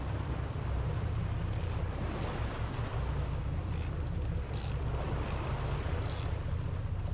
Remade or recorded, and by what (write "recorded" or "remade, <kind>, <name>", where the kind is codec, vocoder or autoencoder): remade, vocoder, BigVGAN v2